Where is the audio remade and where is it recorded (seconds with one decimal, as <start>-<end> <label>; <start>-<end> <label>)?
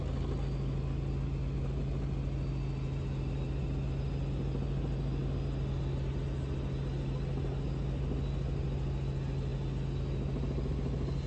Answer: 0.0-11.3 recorded